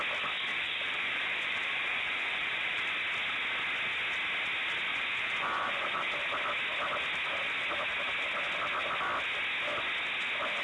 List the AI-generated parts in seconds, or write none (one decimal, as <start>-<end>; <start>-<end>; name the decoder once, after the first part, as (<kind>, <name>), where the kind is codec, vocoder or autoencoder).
0.5-2.8 (vocoder, Vocos); 4.9-6.1